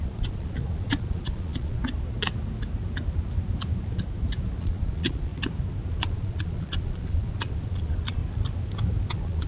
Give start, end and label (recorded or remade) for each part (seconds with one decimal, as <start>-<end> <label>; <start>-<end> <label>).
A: 0.0-1.8 remade; 1.8-4.6 recorded; 4.6-5.3 remade; 5.3-6.0 recorded; 6.0-8.2 remade; 8.2-9.1 recorded; 9.1-9.5 remade